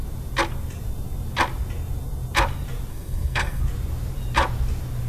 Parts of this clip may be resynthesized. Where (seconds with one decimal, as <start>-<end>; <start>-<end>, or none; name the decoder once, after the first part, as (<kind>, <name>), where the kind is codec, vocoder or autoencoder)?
2.9-3.6 (codec, SNAC)